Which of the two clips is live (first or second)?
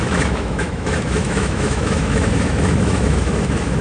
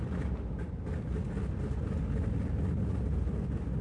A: second